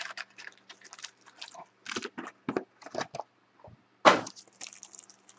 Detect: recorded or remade recorded